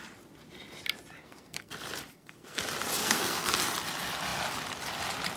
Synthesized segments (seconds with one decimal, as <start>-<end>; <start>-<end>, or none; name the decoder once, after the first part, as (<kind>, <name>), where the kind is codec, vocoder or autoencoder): 1.2-1.7 (codec, SNAC); 2.1-2.6; 3.0-3.5